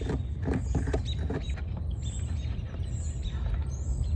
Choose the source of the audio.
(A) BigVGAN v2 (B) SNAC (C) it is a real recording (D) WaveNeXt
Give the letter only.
C